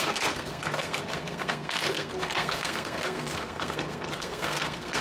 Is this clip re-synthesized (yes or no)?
yes